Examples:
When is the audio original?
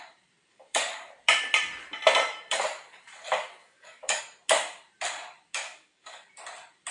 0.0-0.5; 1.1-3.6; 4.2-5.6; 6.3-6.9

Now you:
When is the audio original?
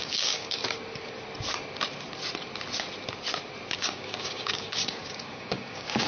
0.6-3.7